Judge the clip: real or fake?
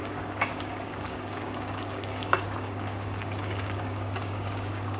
fake